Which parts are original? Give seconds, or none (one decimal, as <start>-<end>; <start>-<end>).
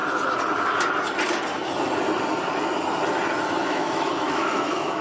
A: 0.0-3.6